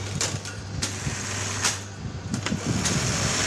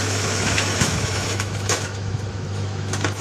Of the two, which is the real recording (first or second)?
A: first